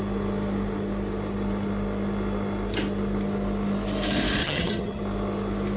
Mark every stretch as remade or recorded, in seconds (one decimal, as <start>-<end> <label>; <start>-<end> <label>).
0.0-4.4 recorded; 4.4-5.0 remade; 5.0-5.8 recorded